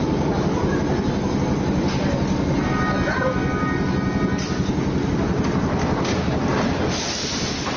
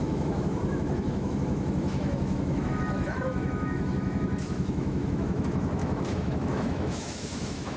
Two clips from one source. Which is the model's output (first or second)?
second